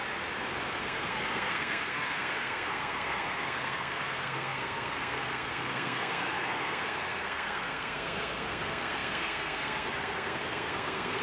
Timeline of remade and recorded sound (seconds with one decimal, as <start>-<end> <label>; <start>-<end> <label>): 0.0-0.8 recorded; 0.8-11.2 remade